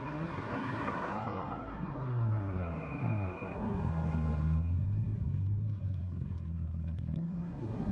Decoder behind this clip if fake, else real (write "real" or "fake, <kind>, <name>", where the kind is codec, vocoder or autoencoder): fake, codec, SNAC